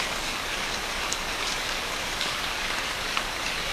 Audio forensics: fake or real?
fake